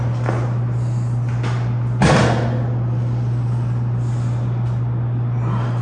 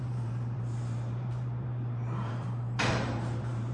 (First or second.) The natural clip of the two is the first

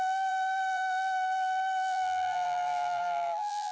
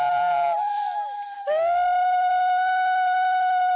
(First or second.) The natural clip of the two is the second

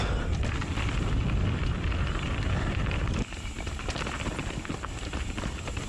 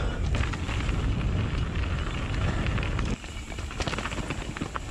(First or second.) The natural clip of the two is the second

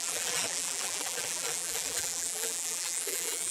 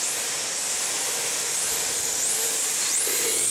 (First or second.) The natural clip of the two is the second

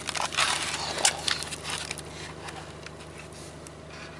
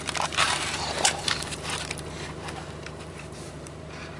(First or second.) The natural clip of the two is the first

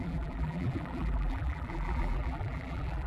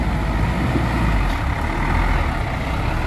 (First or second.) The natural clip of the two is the second